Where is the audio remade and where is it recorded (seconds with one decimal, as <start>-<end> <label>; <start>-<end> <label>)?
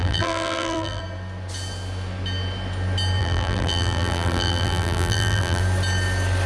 0.0-1.0 remade; 1.0-3.2 recorded; 3.2-5.6 remade; 5.6-6.5 recorded